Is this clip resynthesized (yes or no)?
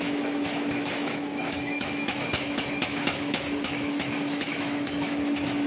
yes